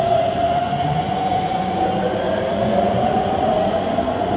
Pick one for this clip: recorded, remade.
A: remade